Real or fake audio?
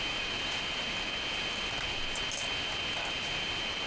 real